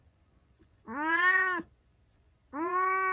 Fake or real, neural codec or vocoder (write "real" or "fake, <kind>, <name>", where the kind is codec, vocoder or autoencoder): fake, vocoder, Vocos